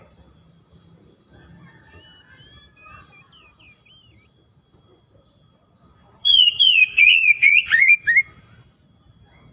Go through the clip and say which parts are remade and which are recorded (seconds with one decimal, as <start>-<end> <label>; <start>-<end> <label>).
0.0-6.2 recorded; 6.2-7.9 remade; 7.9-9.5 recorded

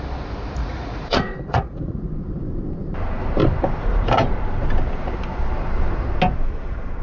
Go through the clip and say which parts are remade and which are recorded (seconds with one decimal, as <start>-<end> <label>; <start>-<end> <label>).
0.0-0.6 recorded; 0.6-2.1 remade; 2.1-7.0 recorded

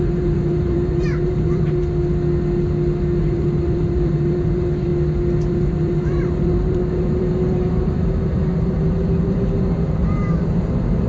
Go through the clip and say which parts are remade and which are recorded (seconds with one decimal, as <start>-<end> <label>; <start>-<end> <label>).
0.0-1.8 remade; 1.8-3.2 recorded; 3.2-4.9 remade; 4.9-5.5 recorded; 5.5-11.1 remade

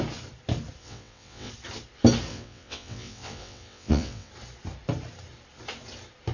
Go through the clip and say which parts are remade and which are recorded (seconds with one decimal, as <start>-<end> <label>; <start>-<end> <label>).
0.0-0.8 recorded; 0.8-1.5 remade; 1.5-2.3 recorded; 2.3-4.3 remade; 4.3-6.3 recorded

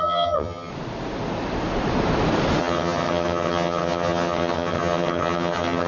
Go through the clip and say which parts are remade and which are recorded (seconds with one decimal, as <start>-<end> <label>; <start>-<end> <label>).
0.0-0.7 remade; 0.7-2.6 recorded; 2.6-5.9 remade

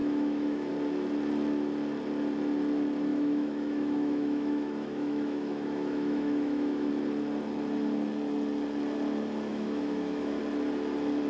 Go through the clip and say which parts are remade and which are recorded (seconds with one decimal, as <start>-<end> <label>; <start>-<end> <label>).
0.0-0.7 remade; 0.7-3.1 recorded; 3.1-6.9 remade; 6.9-9.5 recorded; 9.5-10.4 remade; 10.4-11.3 recorded

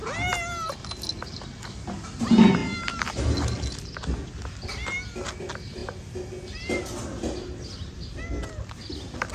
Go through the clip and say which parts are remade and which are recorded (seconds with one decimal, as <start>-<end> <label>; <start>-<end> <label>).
0.0-2.6 recorded; 2.6-3.2 remade; 3.2-9.3 recorded

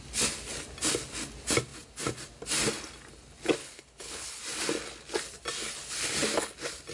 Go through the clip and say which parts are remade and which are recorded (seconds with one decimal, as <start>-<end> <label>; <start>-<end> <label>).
0.0-3.6 recorded; 3.6-4.4 remade; 4.4-6.9 recorded